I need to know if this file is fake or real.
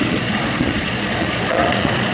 fake